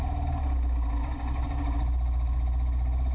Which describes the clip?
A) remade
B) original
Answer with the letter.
B